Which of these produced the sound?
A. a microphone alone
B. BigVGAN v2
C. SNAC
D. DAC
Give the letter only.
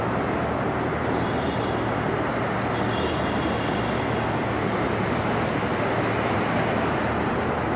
A